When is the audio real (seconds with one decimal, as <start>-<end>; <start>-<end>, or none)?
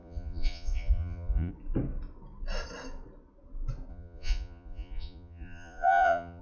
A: 1.5-3.9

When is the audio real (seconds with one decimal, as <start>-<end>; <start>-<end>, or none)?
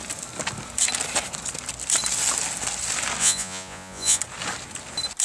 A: 0.0-3.2; 4.2-5.2